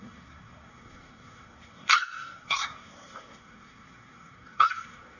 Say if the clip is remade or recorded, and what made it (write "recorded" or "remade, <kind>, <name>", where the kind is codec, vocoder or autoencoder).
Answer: remade, codec, SNAC